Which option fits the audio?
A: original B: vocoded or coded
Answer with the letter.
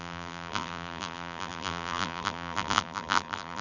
B